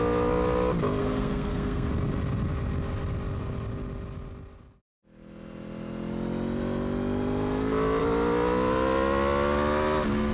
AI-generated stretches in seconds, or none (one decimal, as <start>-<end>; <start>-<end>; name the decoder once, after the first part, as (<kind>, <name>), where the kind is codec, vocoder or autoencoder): 1.0-1.9 (codec, SNAC)